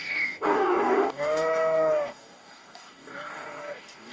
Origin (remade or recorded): remade